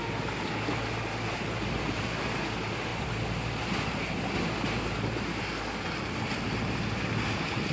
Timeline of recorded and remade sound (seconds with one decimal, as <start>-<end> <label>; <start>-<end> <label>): 0.0-7.7 recorded